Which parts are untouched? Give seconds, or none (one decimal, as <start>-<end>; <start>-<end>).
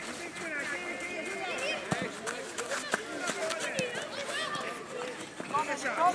0.0-6.1